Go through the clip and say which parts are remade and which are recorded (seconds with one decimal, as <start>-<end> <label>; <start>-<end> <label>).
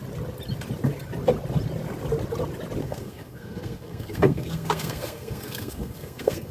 0.0-2.8 recorded; 2.8-6.5 remade